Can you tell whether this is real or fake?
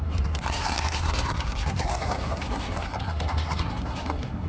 fake